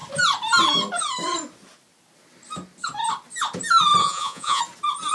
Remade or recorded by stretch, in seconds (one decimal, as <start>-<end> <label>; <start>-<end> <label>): 0.0-4.0 recorded; 4.0-4.6 remade; 4.6-5.1 recorded